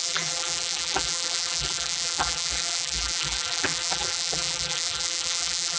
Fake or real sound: fake